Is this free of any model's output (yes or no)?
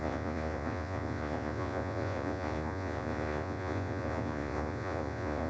no